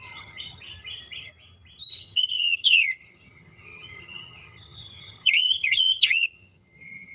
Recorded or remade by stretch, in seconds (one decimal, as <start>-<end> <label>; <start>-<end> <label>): 0.0-1.3 remade; 1.3-1.9 recorded; 1.9-7.1 remade